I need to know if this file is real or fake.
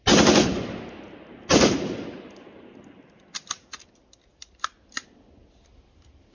real